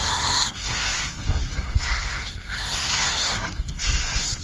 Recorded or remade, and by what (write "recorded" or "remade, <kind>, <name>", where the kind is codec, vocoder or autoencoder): remade, codec, SNAC